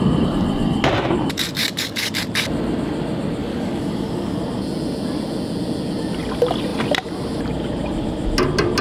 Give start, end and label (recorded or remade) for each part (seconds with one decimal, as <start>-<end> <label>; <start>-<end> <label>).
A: 0.0-1.6 recorded; 1.6-2.1 remade; 2.1-3.4 recorded; 3.4-4.4 remade; 4.4-8.8 recorded